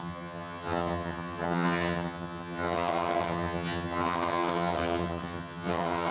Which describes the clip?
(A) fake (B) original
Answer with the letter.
A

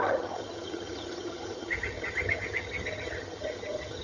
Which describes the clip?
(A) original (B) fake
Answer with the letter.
B